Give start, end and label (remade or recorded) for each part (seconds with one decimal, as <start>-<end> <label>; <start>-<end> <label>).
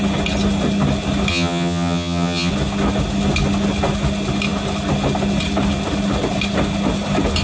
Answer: 0.0-1.3 recorded; 1.3-2.5 remade; 2.5-7.4 recorded